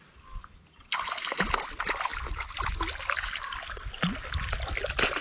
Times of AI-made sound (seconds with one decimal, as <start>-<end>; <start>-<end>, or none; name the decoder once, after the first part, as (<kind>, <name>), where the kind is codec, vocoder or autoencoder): none

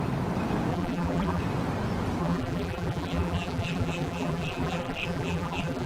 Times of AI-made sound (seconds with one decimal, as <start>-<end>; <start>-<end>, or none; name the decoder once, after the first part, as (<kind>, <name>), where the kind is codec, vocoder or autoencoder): 0.7-1.4 (vocoder, BigVGAN v2); 2.2-5.9

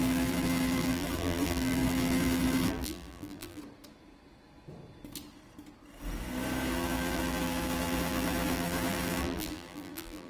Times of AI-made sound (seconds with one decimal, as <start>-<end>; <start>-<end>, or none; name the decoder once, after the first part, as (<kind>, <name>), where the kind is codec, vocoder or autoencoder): 0.0-3.6 (vocoder, BigVGAN v2); 6.7-10.3

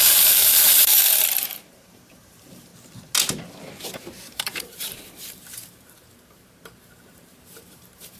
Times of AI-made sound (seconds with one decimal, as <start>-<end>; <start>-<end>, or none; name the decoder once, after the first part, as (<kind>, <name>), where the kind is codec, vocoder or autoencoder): 0.0-2.7 (vocoder, BigVGAN v2); 3.7-8.2

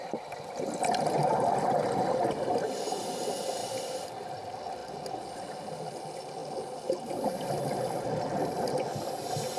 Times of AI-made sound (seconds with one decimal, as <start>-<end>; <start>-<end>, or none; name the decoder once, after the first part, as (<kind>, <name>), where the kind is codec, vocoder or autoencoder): none

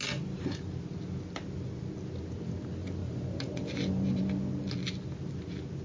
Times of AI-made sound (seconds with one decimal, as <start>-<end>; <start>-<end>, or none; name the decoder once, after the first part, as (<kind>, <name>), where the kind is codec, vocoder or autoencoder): 3.0-4.2 (vocoder, BigVGAN v2)

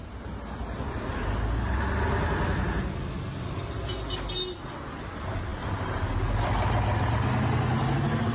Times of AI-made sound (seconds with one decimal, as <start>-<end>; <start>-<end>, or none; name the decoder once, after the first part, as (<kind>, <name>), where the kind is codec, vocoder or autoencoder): none